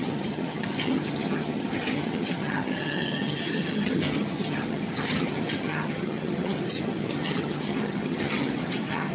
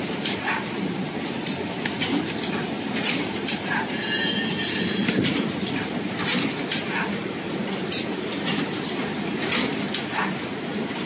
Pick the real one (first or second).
second